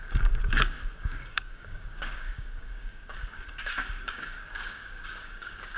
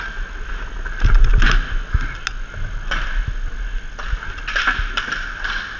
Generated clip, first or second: first